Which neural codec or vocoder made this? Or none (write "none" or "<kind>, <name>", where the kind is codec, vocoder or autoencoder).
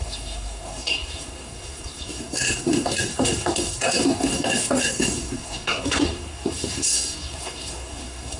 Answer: codec, SNAC